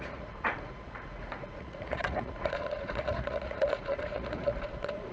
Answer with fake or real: fake